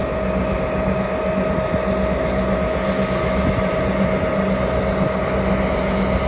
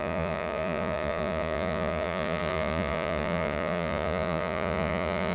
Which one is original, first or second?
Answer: first